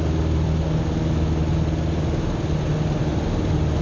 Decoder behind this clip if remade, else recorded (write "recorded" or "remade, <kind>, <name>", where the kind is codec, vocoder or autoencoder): recorded